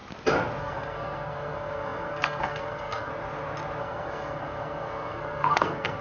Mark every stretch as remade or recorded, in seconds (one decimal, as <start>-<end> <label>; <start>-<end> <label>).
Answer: 0.0-0.6 recorded; 0.6-3.1 remade; 3.1-3.8 recorded; 3.8-6.0 remade